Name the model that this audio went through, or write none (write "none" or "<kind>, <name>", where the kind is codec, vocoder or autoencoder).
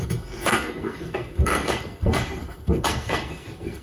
codec, SNAC